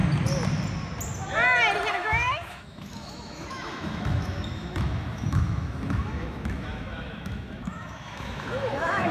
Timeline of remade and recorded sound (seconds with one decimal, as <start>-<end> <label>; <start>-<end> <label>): 0.0-1.9 recorded; 1.9-9.1 remade